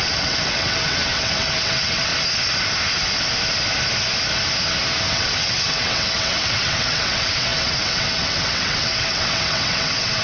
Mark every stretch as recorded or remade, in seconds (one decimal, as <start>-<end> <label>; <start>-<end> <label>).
0.0-2.1 remade; 2.1-5.1 recorded; 5.1-10.2 remade